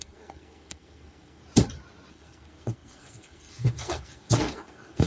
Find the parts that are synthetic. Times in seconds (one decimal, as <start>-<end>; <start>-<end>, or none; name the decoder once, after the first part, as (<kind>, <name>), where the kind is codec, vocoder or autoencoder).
0.0-1.4 (codec, SNAC); 2.1-5.1